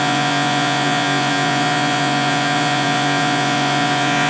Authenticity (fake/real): fake